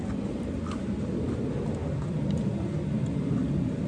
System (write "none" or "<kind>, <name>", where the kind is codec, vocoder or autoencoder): none